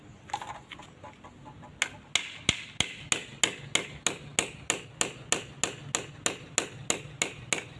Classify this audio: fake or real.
real